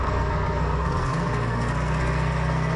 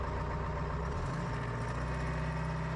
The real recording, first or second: second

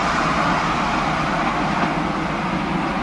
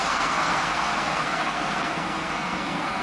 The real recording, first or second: first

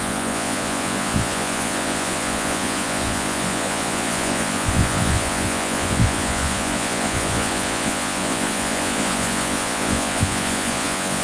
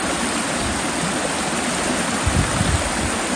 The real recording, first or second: second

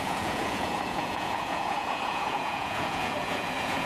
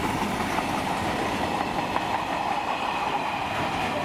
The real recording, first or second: second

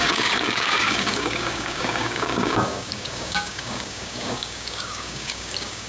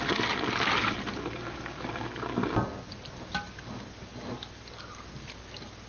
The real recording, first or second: second